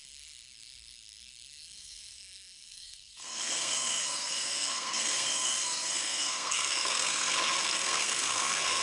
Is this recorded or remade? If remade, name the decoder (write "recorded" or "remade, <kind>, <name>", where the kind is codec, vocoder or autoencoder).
remade, codec, SNAC